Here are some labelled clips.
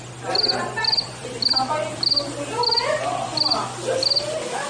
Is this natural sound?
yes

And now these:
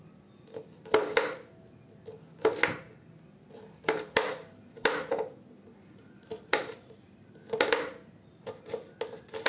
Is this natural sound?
yes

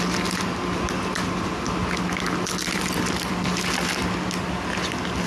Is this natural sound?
yes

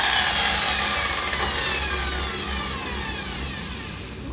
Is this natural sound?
yes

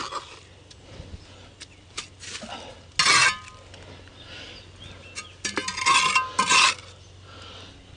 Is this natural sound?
yes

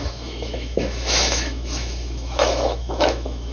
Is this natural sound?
no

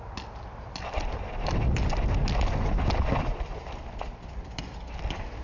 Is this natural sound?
yes